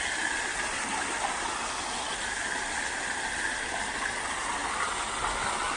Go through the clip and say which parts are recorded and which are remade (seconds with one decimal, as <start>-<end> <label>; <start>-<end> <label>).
0.0-5.8 recorded

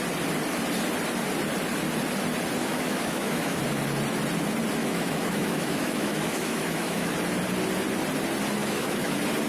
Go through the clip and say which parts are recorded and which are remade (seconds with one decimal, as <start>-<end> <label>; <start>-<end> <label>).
0.0-2.6 recorded; 2.6-3.6 remade; 3.6-4.8 recorded; 4.8-7.1 remade; 7.1-8.6 recorded; 8.6-9.1 remade; 9.1-9.5 recorded

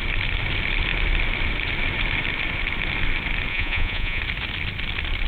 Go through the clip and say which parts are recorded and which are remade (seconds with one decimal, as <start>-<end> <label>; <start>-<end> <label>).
0.0-3.5 recorded; 3.5-4.2 remade; 4.2-5.3 recorded

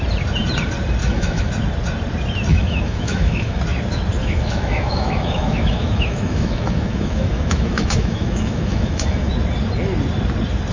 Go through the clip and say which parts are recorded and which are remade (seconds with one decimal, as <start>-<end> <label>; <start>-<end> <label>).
0.0-1.0 recorded; 1.0-1.5 remade; 1.5-2.5 recorded; 2.5-3.6 remade; 3.6-4.2 recorded; 4.2-9.3 remade; 9.3-10.7 recorded